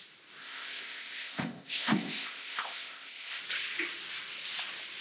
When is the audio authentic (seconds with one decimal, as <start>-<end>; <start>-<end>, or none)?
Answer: 0.0-0.4; 3.4-5.0